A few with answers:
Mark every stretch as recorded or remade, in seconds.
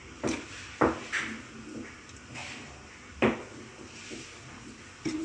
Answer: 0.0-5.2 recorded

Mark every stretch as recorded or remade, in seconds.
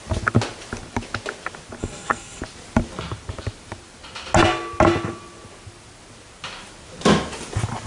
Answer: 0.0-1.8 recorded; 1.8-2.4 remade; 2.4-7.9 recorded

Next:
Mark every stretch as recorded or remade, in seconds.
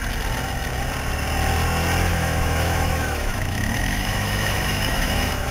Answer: 0.0-2.1 recorded; 2.1-5.5 remade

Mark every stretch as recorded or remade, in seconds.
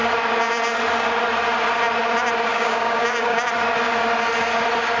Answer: 0.0-2.5 recorded; 2.5-3.4 remade; 3.4-5.0 recorded